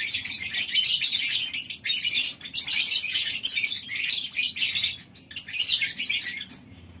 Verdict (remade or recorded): recorded